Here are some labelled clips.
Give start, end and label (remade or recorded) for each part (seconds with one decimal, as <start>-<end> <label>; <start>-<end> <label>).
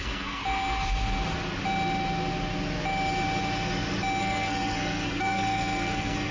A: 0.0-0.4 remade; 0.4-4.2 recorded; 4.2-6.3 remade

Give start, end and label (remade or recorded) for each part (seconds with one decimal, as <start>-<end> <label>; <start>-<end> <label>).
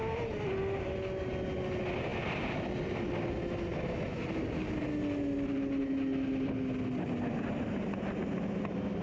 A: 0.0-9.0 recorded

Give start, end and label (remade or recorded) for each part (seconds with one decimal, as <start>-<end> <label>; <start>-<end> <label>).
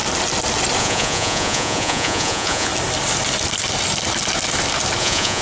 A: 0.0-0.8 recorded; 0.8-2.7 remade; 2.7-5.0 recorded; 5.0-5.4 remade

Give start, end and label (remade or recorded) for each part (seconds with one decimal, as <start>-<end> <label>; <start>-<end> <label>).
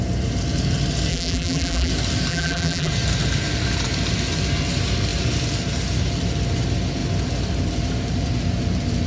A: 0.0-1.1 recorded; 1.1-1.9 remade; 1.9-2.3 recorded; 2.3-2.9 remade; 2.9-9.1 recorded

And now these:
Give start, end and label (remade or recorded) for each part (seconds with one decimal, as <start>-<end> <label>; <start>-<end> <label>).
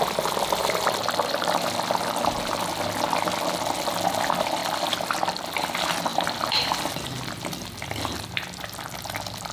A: 0.0-0.6 recorded; 0.6-2.2 remade; 2.2-4.6 recorded; 4.6-5.5 remade; 5.5-6.1 recorded; 6.1-6.9 remade; 6.9-9.5 recorded